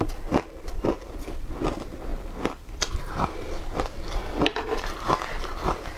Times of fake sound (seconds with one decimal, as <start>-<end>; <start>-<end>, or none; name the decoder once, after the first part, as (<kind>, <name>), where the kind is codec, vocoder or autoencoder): none